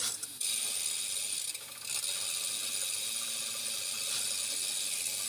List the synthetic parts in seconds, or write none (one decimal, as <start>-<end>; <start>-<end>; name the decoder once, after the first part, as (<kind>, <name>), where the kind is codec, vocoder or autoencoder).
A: none